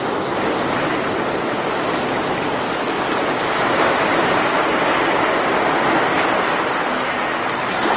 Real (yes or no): yes